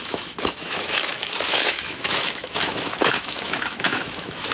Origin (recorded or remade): remade